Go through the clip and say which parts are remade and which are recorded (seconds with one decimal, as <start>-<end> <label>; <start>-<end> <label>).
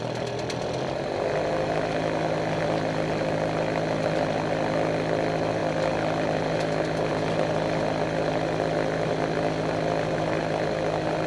0.0-11.3 recorded